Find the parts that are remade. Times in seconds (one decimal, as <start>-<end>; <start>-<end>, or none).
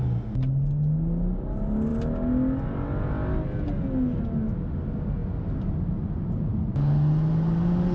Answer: none